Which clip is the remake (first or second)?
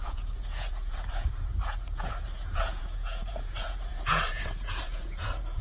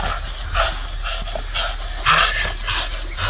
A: first